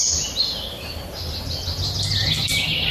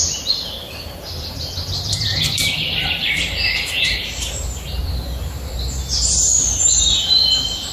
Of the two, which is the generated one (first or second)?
second